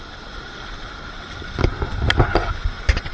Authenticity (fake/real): real